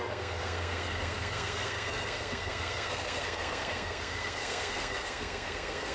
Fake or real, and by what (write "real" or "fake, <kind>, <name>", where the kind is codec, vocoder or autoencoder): fake, codec, SNAC